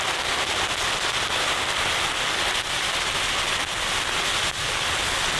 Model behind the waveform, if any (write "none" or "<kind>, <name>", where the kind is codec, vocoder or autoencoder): none